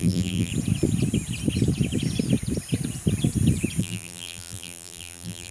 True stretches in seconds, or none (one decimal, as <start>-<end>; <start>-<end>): 0.5-3.8